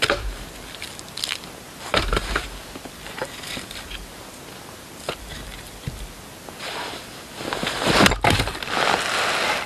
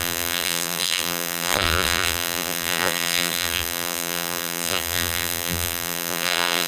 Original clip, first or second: first